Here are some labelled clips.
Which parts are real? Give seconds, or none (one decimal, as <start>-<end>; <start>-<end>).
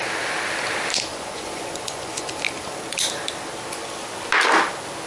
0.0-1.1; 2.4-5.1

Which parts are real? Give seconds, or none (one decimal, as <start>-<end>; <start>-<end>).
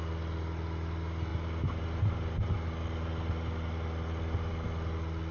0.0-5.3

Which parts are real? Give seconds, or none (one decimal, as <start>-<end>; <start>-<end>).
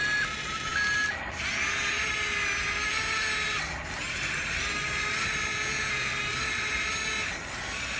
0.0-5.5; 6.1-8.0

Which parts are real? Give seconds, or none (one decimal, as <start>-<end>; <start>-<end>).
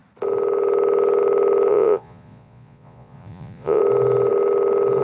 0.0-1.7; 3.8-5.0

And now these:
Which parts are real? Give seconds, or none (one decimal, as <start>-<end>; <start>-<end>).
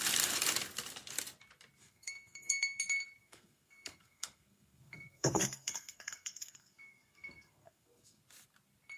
0.0-1.8; 2.8-3.2; 8.2-9.0